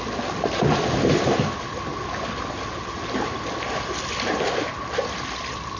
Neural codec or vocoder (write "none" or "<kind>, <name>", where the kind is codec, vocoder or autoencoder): none